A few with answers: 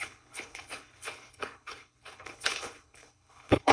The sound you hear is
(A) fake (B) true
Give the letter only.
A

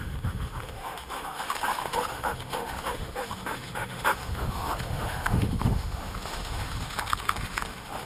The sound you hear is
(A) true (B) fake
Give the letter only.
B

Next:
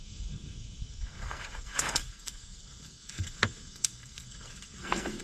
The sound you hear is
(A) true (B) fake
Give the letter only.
B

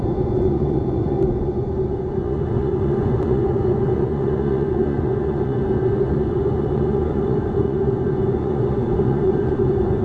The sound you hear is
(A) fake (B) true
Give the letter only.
A